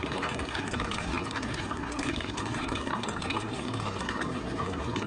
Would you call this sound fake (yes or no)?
yes